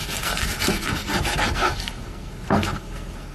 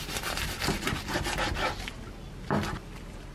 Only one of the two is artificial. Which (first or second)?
first